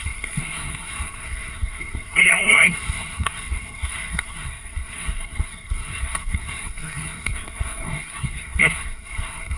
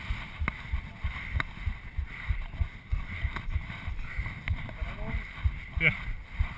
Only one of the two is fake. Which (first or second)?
first